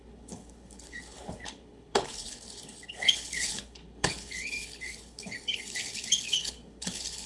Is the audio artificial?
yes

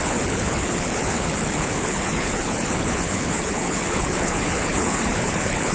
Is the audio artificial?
yes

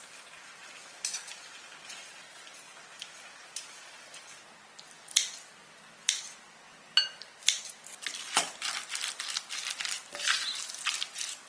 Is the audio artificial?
no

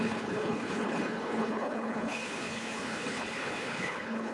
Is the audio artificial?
yes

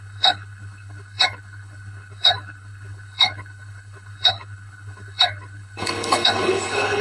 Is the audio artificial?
yes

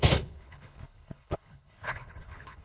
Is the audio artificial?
yes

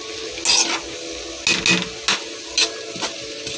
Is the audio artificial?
no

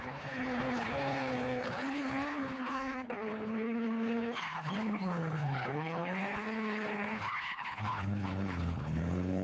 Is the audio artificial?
yes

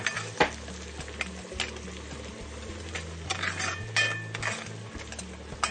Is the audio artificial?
no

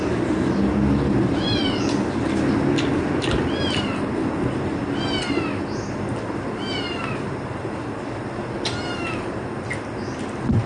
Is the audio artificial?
no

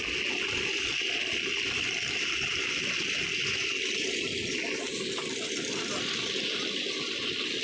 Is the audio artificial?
no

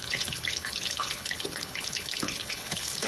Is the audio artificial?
yes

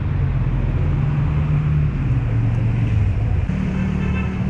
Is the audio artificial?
no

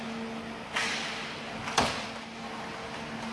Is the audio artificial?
no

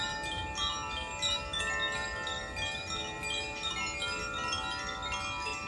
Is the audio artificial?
no